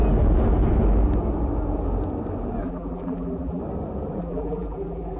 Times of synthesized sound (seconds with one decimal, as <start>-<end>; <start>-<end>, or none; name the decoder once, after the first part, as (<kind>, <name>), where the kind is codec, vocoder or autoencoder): 2.6-3.6 (vocoder, BigVGAN v2); 4.2-5.2